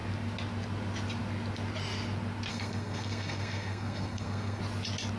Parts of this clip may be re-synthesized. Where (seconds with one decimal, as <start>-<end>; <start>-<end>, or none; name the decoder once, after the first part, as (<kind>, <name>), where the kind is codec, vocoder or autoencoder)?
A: 2.5-4.6 (codec, SNAC)